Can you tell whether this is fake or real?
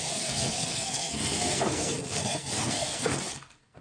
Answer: fake